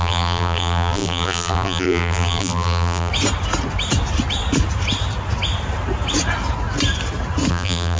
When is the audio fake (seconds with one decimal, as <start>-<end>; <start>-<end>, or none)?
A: 0.0-3.1; 7.5-8.0